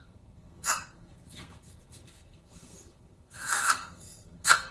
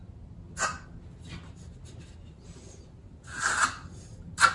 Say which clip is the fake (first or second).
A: first